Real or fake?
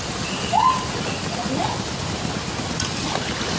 real